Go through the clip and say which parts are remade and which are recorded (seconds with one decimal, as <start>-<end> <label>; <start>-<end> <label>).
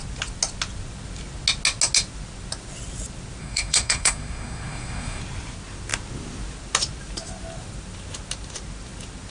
0.0-3.4 recorded; 3.4-5.2 remade; 5.2-9.3 recorded